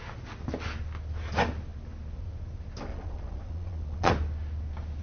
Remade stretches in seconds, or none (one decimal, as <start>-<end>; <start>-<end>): 2.9-4.1

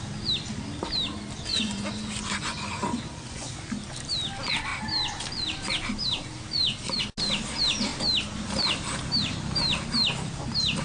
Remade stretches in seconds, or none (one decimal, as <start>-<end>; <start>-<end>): 1.5-3.5

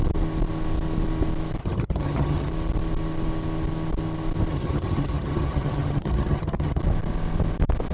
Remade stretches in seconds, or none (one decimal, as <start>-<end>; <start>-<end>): 1.6-2.5; 4.5-6.8

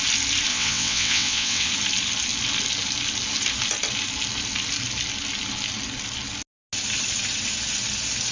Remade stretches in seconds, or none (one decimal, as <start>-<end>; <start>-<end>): 0.5-1.7

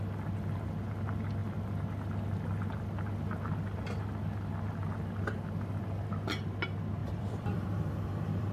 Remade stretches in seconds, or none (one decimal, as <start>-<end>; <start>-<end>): 7.0-8.5